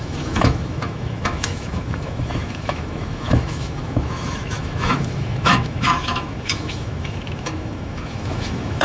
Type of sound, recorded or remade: remade